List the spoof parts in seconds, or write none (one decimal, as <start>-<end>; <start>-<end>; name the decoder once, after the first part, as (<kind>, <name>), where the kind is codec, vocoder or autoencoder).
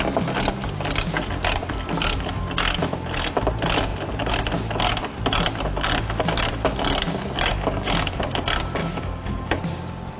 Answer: 7.5-8.2 (codec, DAC); 8.8-9.6